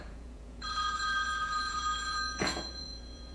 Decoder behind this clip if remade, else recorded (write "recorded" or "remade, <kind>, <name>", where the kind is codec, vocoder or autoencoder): remade, vocoder, Vocos